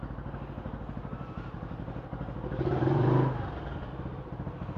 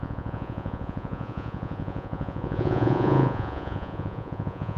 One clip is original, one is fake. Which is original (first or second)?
first